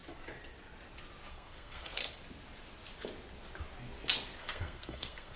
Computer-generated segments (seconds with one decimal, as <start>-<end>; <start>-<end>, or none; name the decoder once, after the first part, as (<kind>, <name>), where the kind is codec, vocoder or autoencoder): 1.3-2.0 (codec, SNAC); 4.4-5.4